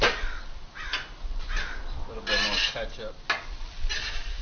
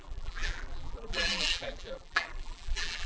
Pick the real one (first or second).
first